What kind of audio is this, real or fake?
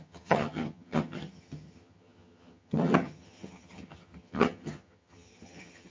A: fake